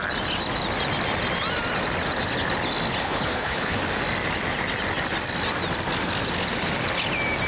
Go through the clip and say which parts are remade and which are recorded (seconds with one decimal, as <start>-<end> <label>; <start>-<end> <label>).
0.0-3.0 recorded; 3.0-3.8 remade; 3.8-7.5 recorded